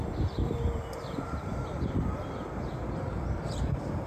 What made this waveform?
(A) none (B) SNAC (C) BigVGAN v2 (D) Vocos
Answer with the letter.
C